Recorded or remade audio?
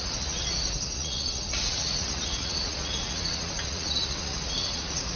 remade